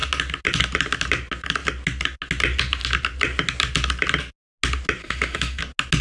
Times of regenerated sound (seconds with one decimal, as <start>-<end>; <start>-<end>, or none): 5.0-5.6